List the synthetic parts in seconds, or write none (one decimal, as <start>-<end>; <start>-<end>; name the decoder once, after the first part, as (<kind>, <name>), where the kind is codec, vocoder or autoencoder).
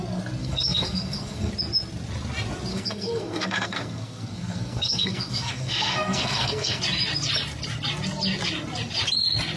0.4-1.5 (codec, SNAC); 2.7-6.8